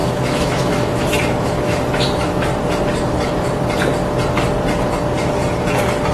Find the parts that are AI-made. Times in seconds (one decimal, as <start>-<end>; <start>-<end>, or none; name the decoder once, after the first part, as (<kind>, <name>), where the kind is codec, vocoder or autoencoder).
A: 0.0-2.5 (autoencoder, DAC-VAE)